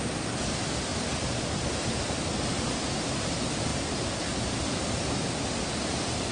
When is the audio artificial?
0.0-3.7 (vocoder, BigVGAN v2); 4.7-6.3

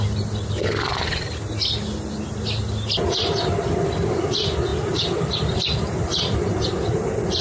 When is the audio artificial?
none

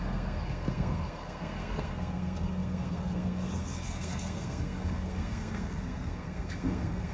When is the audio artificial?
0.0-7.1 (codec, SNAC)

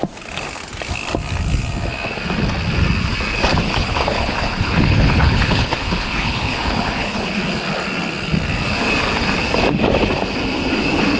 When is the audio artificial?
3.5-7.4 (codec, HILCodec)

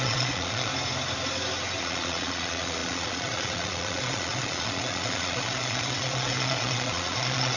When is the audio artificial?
0.0-0.7 (vocoder, Vocos); 1.8-7.6

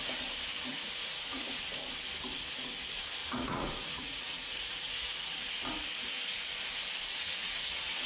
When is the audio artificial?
0.7-1.6 (vocoder, Vocos); 3.2-5.4; 7.1-8.1

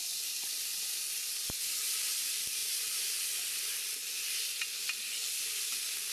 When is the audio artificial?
none